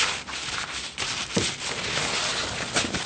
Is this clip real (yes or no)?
yes